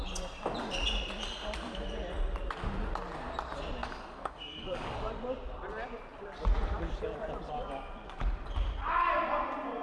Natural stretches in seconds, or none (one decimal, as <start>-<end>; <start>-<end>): 0.0-3.8; 5.1-9.8